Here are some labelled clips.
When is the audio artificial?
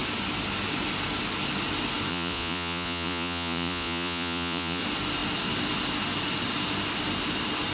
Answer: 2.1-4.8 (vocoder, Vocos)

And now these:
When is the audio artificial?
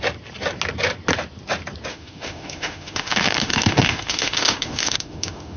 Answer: 1.9-5.6 (autoencoder, DAC-VAE)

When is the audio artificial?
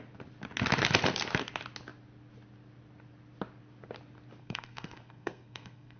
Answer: 4.4-6.0 (codec, SNAC)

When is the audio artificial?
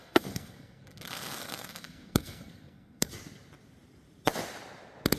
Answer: 0.0-3.1 (codec, SNAC)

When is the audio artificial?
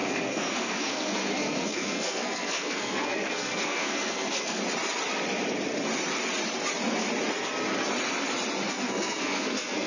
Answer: 0.0-4.6 (codec, SNAC); 8.7-9.9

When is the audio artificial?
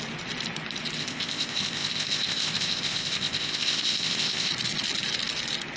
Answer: 1.0-4.5 (codec, ZipCodec)